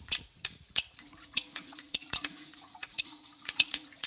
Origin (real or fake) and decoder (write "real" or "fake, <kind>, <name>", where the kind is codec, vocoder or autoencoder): fake, vocoder, Vocos